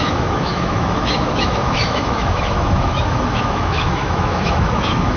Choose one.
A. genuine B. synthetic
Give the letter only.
B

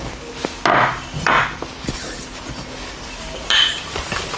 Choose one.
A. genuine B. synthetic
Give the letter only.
A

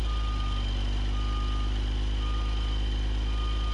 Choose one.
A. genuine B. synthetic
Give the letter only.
A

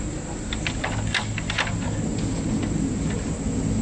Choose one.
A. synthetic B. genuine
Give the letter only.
B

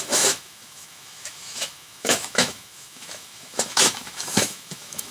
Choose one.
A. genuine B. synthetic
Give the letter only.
B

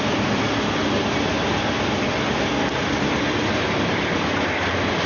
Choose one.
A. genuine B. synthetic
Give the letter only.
A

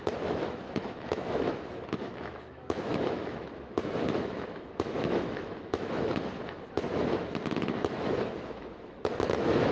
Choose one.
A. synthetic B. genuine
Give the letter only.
A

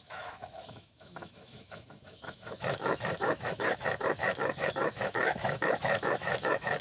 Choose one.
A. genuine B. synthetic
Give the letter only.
B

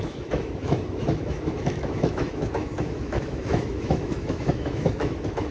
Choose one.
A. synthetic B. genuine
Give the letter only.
A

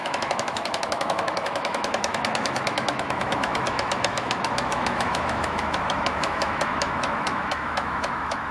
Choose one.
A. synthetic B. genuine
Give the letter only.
A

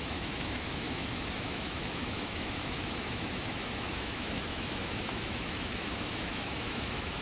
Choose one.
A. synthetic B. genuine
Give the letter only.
A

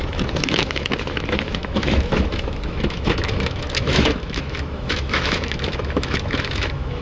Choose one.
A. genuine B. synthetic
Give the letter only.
B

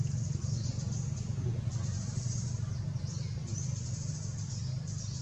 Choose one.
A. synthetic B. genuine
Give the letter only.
B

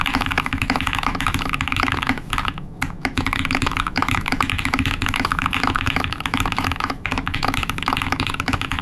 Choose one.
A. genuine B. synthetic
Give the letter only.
B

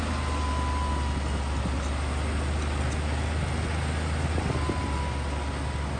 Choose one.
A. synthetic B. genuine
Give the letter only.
B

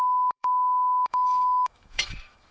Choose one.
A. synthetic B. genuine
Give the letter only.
A